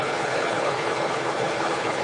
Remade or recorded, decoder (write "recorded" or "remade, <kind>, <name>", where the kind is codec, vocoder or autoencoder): remade, codec, HILCodec